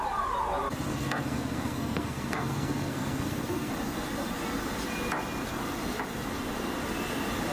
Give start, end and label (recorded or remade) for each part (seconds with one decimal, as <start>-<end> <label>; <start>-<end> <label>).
0.0-0.9 recorded; 0.9-3.7 remade; 3.7-7.5 recorded